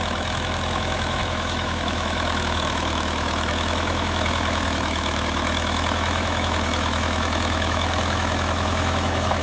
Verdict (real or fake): fake